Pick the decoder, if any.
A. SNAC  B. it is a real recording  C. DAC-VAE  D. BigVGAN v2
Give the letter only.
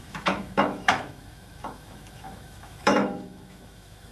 C